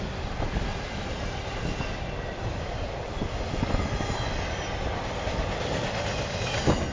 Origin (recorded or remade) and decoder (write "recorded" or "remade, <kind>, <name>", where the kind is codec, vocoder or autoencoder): recorded